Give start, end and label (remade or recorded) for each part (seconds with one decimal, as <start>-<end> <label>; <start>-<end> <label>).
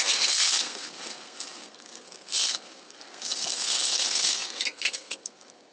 0.0-5.7 remade